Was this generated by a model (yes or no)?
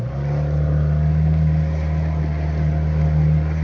no